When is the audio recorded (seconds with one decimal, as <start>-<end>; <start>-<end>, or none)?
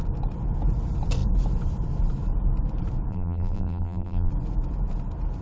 0.0-3.1; 4.3-5.4